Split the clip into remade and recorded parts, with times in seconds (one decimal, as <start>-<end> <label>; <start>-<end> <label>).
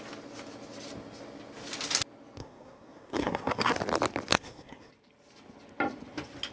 0.0-2.4 recorded; 2.4-3.7 remade; 3.7-4.3 recorded; 4.3-4.9 remade; 4.9-6.5 recorded